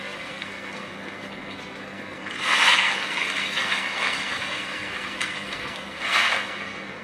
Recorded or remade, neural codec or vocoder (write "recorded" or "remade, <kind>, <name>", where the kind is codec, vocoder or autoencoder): remade, codec, SNAC